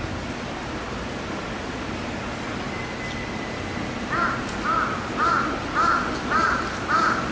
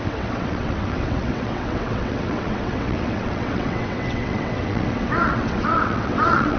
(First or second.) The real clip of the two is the first